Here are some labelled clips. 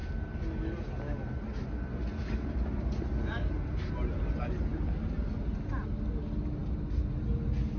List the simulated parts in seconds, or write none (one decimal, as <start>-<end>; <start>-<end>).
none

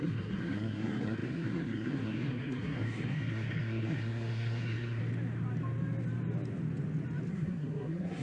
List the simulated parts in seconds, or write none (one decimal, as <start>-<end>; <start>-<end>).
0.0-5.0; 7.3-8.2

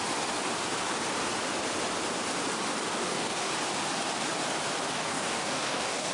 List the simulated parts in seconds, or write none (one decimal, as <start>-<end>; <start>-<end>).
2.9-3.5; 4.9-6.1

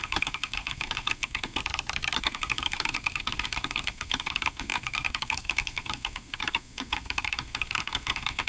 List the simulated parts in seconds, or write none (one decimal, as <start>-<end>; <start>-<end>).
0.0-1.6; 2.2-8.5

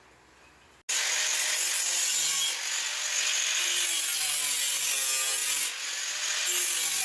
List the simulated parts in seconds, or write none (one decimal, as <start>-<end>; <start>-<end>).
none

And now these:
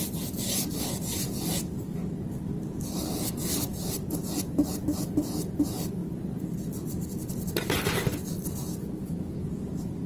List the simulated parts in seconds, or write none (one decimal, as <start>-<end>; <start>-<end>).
none

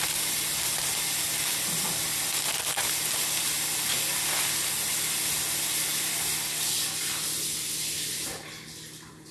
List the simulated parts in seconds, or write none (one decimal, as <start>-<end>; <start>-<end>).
none